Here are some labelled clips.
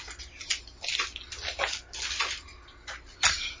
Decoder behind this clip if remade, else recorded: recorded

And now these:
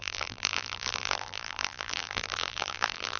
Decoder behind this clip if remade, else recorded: remade, vocoder, BigVGAN v2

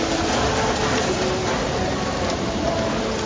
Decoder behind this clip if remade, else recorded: recorded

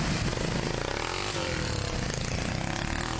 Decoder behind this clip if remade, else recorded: recorded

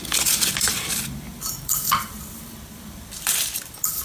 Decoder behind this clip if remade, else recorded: remade, vocoder, BigVGAN v2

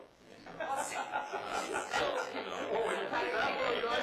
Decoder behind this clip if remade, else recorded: remade, vocoder, BigVGAN v2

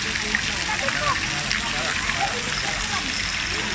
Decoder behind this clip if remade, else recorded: recorded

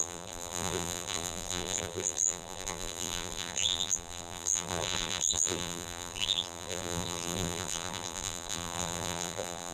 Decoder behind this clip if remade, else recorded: remade, vocoder, BigVGAN v2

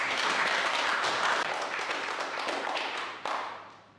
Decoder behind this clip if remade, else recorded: remade, vocoder, BigVGAN v2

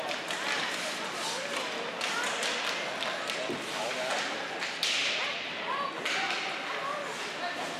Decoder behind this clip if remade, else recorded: recorded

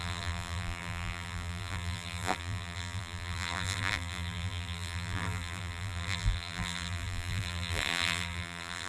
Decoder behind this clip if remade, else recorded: remade, vocoder, BigVGAN v2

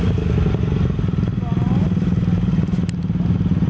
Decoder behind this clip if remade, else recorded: recorded